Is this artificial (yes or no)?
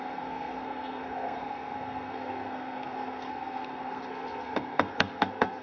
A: yes